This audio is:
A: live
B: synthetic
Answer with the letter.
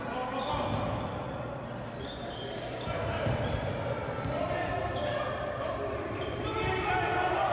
A